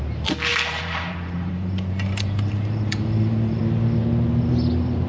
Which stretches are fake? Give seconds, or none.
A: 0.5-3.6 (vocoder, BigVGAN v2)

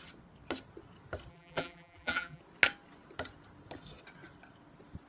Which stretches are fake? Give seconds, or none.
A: 1.3-2.4 (vocoder, BigVGAN v2)

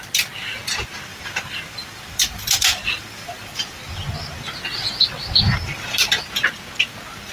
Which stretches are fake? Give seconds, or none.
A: 1.1-3.8 (vocoder, BigVGAN v2)

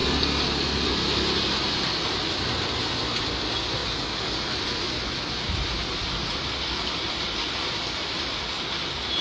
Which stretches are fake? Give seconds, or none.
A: none

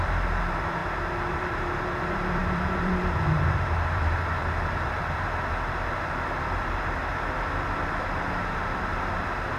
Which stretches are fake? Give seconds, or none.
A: 0.0-0.8 (vocoder, BigVGAN v2); 1.3-7.0; 8.0-9.6

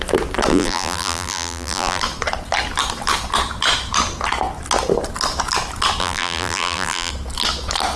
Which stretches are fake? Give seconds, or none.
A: 0.5-2.0 (vocoder, BigVGAN v2); 6.0-7.1